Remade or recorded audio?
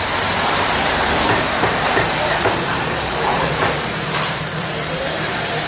remade